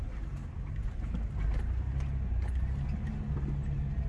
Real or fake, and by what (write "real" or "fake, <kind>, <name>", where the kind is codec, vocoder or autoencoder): real